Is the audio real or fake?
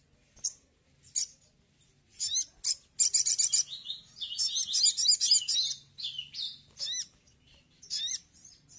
real